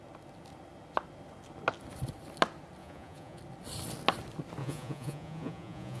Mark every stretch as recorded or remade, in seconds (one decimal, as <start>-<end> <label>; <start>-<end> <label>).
0.0-2.8 recorded; 2.8-3.4 remade; 3.4-4.6 recorded; 4.6-6.0 remade